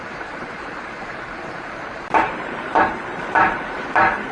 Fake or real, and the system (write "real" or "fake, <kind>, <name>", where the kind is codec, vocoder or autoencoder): fake, vocoder, BigVGAN v2